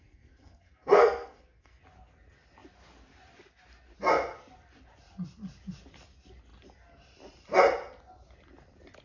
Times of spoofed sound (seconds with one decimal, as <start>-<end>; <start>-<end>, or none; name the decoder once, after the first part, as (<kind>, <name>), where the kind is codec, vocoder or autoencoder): 0.0-1.8 (codec, SNAC)